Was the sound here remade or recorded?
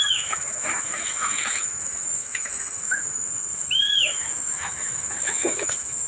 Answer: remade